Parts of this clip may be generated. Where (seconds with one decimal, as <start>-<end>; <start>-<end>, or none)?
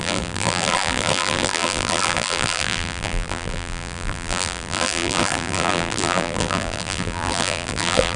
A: 0.0-8.2